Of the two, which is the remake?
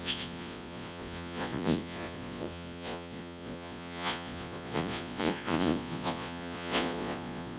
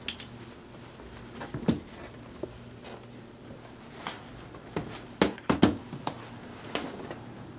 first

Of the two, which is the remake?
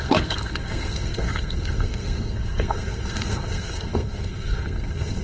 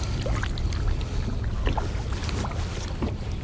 first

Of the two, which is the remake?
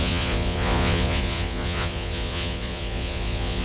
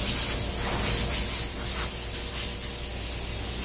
first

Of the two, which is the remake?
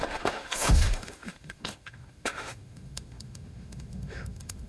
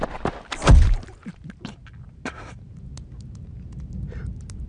first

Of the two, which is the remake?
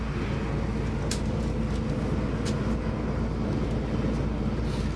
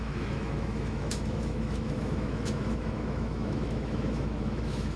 second